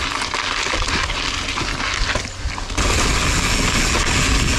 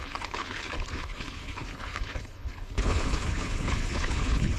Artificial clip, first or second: second